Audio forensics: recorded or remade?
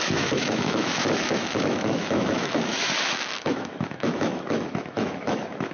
remade